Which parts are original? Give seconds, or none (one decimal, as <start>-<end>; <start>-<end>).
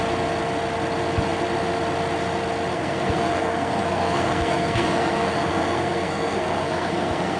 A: 0.0-2.7